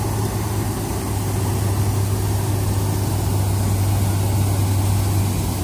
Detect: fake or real real